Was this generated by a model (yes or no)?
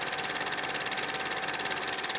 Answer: no